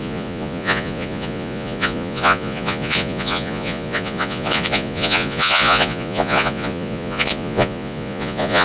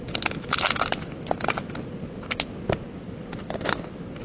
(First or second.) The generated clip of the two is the first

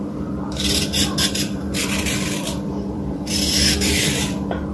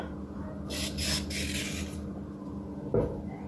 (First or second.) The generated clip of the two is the first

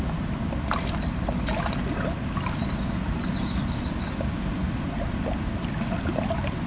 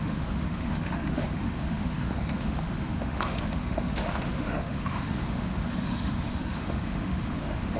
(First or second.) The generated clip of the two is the second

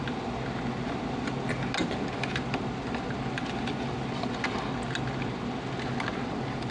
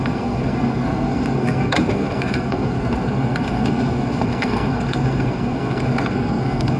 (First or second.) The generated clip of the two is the second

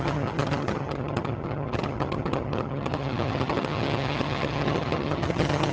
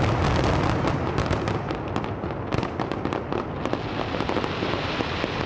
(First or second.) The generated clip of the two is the first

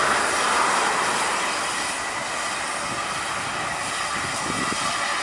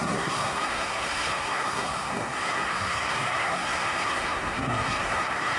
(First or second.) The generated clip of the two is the second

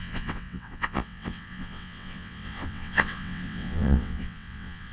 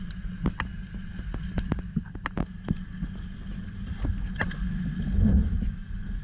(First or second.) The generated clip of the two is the first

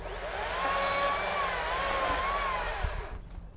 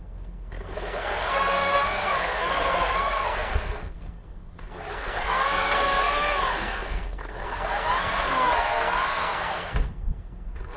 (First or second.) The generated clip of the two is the second